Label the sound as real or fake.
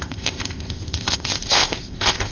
fake